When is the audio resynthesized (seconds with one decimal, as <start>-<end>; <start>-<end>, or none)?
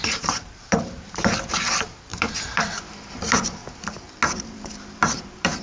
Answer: 0.0-3.6; 4.4-5.6